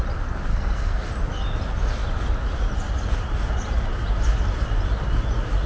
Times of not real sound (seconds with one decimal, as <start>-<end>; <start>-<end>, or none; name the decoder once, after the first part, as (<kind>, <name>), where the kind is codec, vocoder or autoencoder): 0.5-1.1 (codec, SNAC)